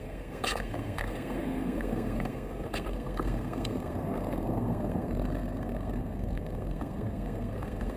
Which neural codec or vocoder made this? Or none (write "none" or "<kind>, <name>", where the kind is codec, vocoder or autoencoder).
codec, SNAC